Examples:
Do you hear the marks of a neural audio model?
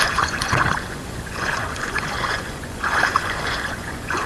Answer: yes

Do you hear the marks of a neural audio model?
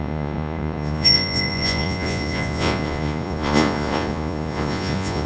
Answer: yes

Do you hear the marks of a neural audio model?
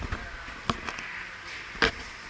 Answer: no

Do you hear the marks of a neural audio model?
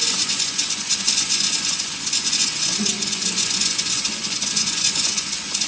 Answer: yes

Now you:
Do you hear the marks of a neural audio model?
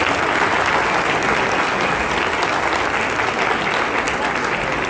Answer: no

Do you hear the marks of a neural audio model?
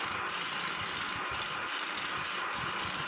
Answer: no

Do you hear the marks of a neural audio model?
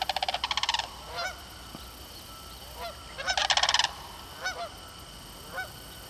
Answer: no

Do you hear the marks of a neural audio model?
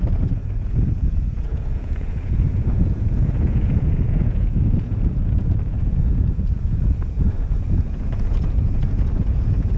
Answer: yes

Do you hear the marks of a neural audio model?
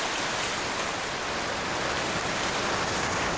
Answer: no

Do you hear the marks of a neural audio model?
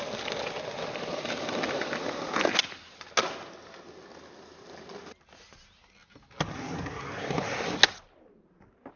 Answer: no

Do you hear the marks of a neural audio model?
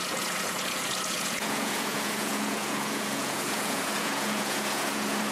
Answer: yes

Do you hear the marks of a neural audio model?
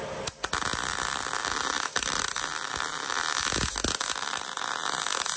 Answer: no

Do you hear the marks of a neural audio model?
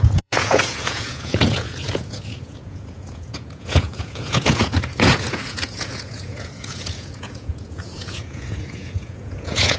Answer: yes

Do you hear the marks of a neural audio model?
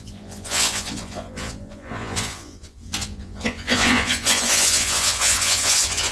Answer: yes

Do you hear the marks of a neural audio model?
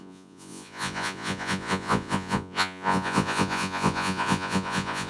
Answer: yes